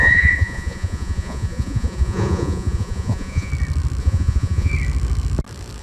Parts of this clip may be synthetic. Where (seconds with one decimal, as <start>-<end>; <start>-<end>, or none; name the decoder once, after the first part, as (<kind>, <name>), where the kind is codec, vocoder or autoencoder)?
0.0-3.5 (vocoder, Vocos); 4.0-4.7